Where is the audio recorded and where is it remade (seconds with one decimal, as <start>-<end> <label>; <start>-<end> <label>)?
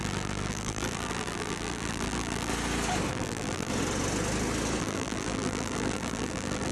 0.0-2.5 remade; 2.5-3.1 recorded; 3.1-3.7 remade; 3.7-4.8 recorded; 4.8-6.7 remade